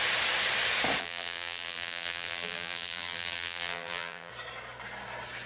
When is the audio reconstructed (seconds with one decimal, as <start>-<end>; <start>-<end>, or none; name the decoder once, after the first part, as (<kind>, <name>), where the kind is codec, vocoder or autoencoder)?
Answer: 1.0-4.3 (vocoder, BigVGAN v2)